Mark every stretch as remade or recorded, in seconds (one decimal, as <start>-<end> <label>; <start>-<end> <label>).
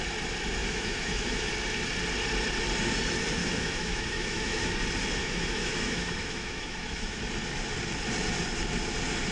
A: 0.0-0.6 recorded; 0.6-1.5 remade; 1.5-3.4 recorded; 3.4-4.7 remade; 4.7-5.2 recorded; 5.2-7.2 remade; 7.2-9.3 recorded